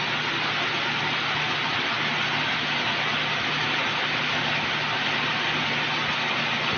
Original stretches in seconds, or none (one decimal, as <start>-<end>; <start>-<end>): 0.0-6.8